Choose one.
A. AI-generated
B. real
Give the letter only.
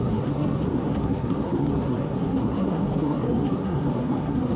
A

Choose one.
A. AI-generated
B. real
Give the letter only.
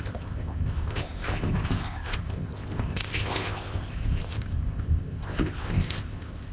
A